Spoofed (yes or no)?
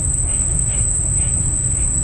yes